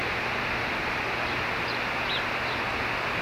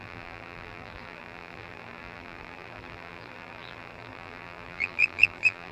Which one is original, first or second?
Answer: first